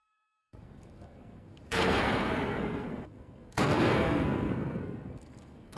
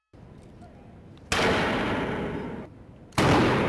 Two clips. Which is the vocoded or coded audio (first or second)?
first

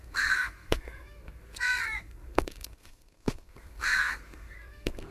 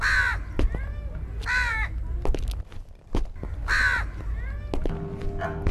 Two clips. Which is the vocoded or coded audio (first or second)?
first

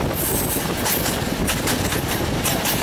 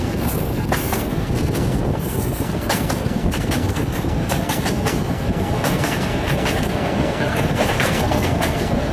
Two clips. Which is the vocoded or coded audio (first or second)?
second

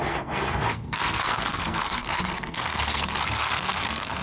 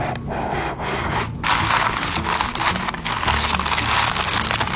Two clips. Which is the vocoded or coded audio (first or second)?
first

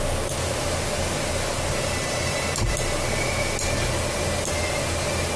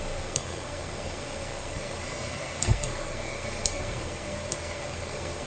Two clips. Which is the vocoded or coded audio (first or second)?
second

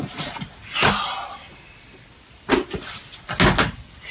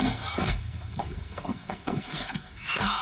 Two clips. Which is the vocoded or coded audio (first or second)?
second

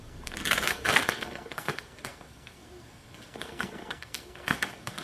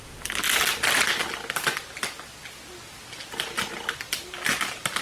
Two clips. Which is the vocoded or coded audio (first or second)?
first